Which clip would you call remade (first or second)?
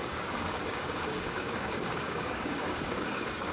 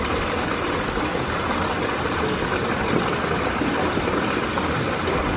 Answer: first